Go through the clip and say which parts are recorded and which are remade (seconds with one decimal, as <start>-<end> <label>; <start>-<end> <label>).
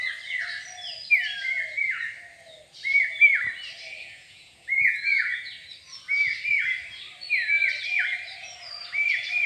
0.0-4.0 recorded; 4.0-5.5 remade; 5.5-9.5 recorded